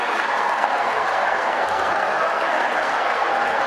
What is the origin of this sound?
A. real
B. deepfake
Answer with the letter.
B